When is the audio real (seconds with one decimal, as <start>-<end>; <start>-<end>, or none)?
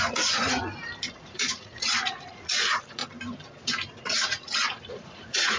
0.6-1.1; 3.0-3.6